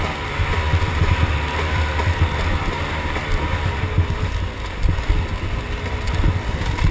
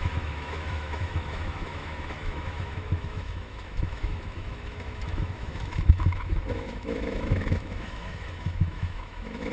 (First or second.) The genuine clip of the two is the first